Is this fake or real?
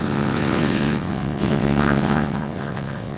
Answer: fake